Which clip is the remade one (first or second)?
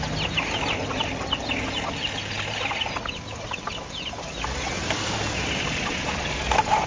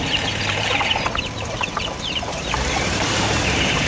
second